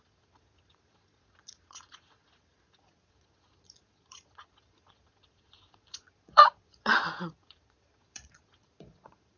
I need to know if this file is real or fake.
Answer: fake